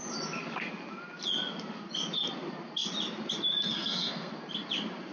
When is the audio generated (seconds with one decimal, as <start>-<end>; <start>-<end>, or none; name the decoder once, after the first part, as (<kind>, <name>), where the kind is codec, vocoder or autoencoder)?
3.7-4.3 (codec, SNAC)